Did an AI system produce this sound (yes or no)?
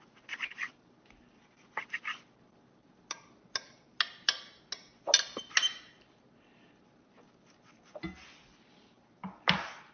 no